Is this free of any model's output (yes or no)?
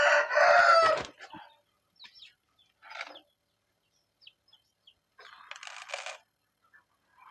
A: yes